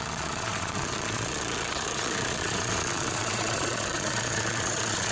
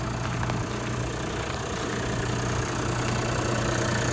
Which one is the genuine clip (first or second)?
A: second